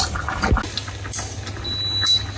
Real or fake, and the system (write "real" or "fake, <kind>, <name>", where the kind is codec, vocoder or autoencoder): real